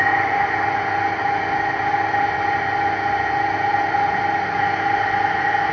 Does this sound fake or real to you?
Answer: real